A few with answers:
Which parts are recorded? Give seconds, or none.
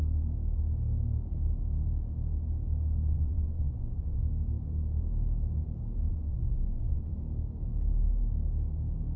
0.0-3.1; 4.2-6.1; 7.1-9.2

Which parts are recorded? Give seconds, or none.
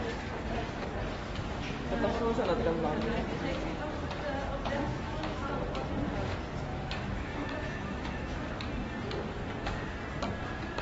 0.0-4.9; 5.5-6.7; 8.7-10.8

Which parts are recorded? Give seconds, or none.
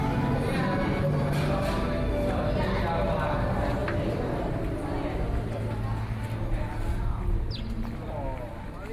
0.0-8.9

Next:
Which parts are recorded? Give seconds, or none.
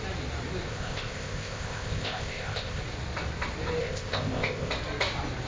0.0-0.7; 2.8-3.8; 4.7-5.5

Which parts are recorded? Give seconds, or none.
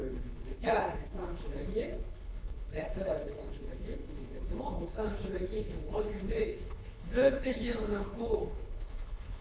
none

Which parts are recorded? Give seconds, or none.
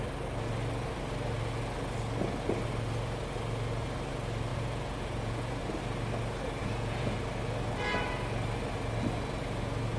0.0-4.5; 5.6-6.6; 7.2-10.0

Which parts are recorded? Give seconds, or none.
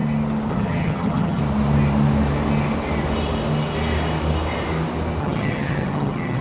0.0-0.5; 1.4-5.2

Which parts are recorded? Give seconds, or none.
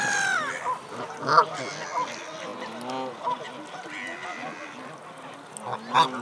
0.0-6.2